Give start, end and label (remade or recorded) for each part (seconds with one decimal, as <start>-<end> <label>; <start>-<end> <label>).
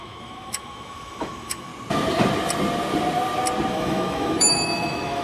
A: 0.0-1.7 remade; 1.7-3.7 recorded; 3.7-5.2 remade